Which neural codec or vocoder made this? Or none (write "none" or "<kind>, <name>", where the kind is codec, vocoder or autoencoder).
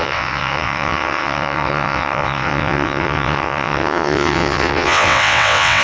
vocoder, WaveNeXt